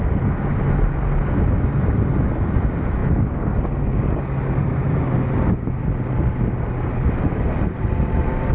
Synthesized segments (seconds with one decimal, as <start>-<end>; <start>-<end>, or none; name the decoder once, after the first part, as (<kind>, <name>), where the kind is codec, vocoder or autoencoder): none

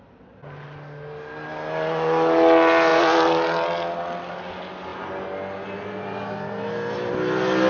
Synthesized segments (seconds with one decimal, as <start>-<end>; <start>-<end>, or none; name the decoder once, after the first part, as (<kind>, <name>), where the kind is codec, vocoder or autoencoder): none

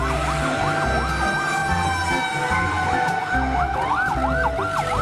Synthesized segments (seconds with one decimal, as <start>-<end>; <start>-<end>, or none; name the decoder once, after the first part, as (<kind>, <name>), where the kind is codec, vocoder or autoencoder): none